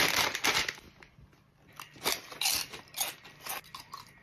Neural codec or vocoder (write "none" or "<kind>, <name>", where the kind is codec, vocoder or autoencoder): none